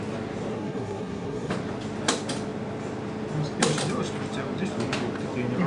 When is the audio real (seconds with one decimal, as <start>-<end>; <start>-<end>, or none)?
0.0-0.5; 1.5-5.7